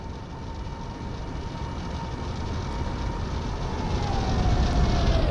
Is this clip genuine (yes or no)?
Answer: yes